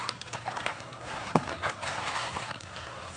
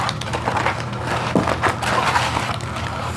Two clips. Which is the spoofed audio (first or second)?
first